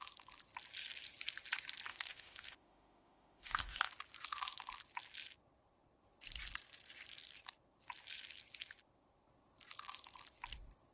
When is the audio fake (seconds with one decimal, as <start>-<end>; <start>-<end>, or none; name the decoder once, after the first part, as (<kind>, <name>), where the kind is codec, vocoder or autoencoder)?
1.9-3.9 (autoencoder, DAC-VAE)